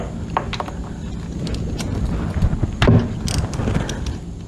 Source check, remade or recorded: recorded